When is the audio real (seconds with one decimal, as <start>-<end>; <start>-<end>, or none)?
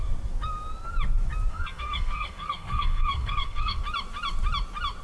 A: 0.0-1.5; 3.8-5.0